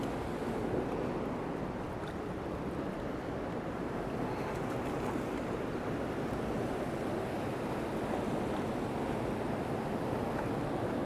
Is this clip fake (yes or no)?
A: no